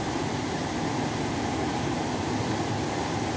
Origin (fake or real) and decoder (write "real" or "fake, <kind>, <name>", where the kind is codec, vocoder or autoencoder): real